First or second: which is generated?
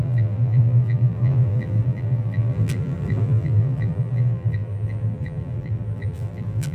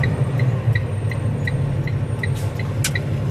first